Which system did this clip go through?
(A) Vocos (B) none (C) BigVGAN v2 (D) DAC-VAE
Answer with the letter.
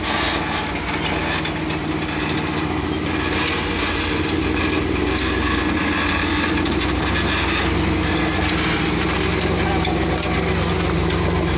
B